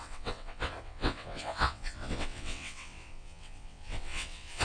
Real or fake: fake